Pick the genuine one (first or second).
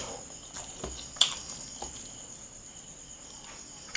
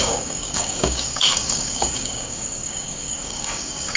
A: first